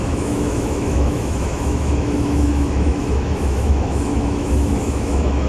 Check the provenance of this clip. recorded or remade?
remade